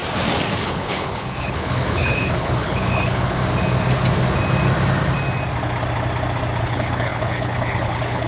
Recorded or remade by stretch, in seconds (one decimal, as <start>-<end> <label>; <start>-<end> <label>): 0.0-0.6 recorded; 0.6-3.4 remade; 3.4-6.6 recorded; 6.6-8.3 remade